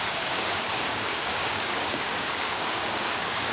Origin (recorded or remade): remade